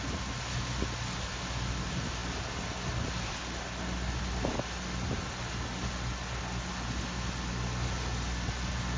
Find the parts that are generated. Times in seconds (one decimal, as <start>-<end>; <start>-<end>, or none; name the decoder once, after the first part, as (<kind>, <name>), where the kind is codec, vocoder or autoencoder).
none